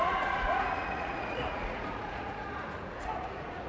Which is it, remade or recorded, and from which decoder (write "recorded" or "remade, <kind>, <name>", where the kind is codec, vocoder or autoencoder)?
remade, vocoder, Vocos